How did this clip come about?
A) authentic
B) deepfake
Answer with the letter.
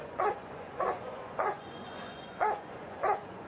B